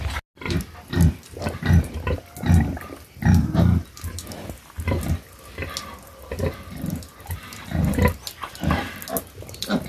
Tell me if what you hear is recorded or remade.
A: recorded